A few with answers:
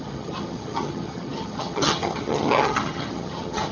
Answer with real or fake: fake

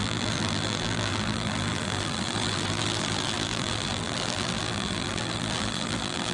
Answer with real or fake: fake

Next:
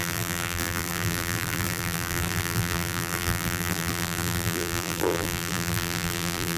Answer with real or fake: fake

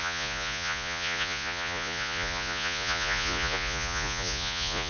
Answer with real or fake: fake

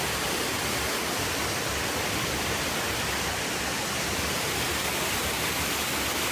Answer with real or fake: fake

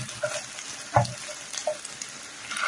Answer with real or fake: real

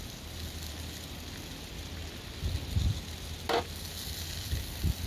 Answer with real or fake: real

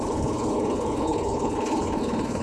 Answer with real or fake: fake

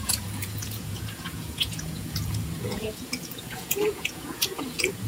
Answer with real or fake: fake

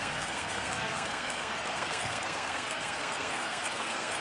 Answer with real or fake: fake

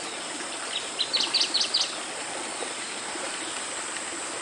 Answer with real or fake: real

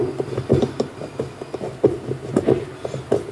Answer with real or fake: real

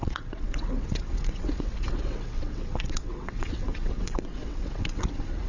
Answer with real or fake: fake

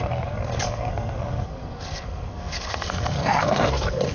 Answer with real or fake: fake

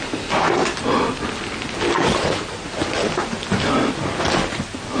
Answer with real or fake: real